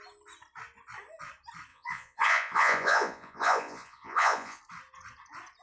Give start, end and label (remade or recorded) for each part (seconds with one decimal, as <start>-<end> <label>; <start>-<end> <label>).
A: 0.0-1.7 recorded; 1.7-4.6 remade; 4.6-5.6 recorded